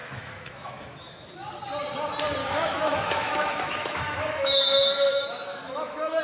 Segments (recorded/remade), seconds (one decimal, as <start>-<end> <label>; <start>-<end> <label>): 0.0-1.3 remade; 1.3-2.4 recorded; 2.4-6.2 remade